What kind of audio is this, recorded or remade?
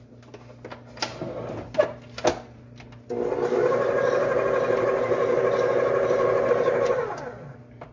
recorded